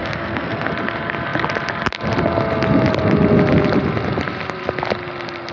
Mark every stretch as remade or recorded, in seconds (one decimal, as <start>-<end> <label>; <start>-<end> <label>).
0.0-0.7 remade; 0.7-5.5 recorded

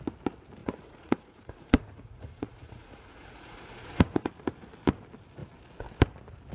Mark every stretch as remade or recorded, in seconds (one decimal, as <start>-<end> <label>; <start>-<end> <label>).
0.0-0.6 recorded; 0.6-4.3 remade; 4.3-6.5 recorded